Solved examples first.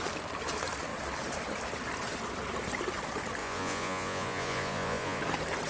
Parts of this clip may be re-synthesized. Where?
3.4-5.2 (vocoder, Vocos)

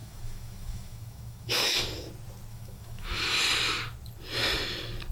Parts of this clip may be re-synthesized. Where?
0.0-1.8 (autoencoder, DAC-VAE); 2.5-3.4